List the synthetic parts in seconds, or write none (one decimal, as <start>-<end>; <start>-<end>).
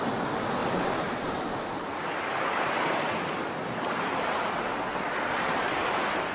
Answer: 0.6-3.1